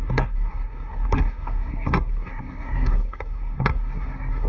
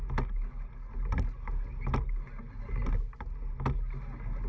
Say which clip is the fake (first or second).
first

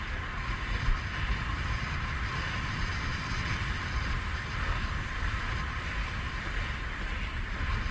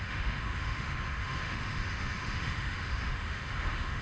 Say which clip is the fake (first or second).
second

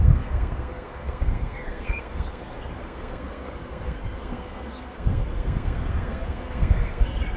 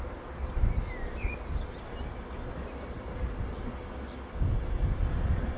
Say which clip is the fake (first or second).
first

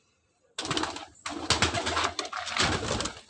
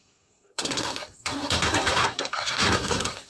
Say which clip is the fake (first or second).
second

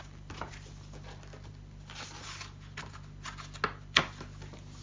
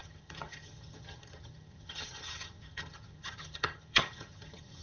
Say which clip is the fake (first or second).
second